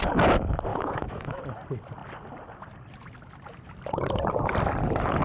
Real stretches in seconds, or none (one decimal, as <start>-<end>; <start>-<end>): 0.0-0.7; 1.4-5.2